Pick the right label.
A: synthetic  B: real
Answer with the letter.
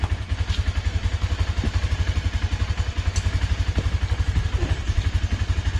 B